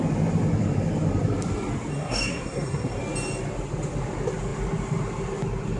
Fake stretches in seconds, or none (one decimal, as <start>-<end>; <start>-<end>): 1.9-3.0